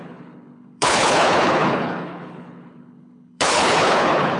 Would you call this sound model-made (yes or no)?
yes